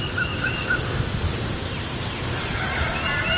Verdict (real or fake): real